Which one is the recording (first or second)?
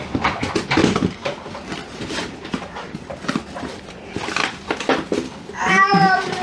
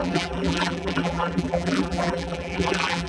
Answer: first